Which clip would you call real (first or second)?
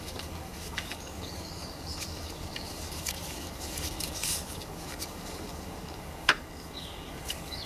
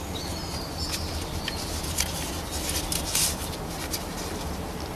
second